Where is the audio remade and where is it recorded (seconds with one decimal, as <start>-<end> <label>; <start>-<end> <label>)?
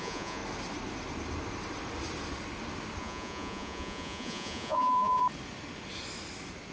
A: 0.0-0.4 remade; 0.4-3.0 recorded; 3.0-5.2 remade; 5.2-6.7 recorded